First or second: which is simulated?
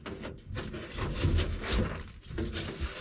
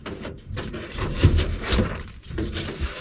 second